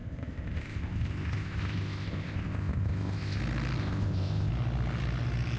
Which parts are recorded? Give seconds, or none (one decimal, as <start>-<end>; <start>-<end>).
3.4-3.8; 4.5-5.6